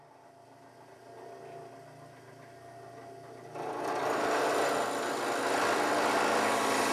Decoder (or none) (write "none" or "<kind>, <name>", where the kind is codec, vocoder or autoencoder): none